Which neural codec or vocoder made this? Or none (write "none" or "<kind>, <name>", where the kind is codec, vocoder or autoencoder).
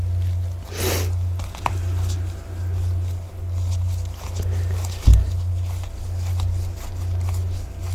none